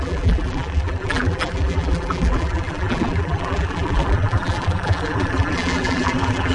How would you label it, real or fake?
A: fake